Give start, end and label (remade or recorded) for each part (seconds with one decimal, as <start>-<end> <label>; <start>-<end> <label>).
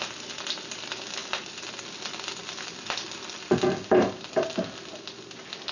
0.0-5.7 recorded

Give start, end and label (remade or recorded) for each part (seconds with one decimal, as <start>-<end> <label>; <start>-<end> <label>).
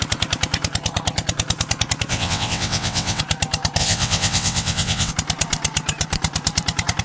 0.0-2.1 recorded; 2.1-3.2 remade; 3.2-3.8 recorded; 3.8-5.1 remade; 5.1-7.0 recorded